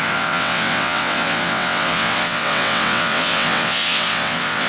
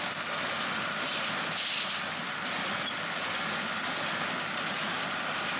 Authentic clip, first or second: second